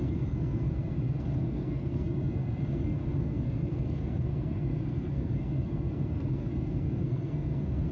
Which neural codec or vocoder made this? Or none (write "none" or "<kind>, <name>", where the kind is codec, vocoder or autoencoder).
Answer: codec, SNAC